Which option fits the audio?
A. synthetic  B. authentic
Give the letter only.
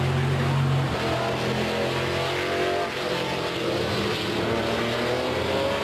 B